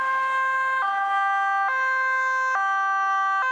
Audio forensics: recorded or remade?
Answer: recorded